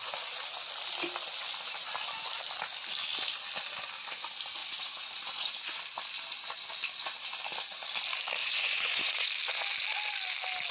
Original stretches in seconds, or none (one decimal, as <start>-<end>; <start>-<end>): 0.0-4.6; 5.5-8.4; 9.3-10.7